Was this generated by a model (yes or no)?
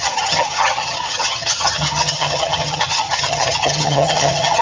yes